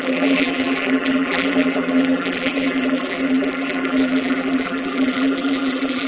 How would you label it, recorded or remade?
remade